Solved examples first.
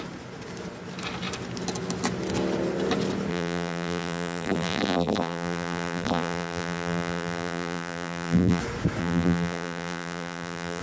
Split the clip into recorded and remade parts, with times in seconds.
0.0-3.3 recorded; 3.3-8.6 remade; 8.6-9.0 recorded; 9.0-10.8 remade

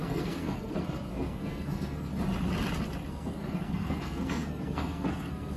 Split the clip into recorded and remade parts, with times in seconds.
0.0-2.1 remade; 2.1-3.1 recorded; 3.1-5.6 remade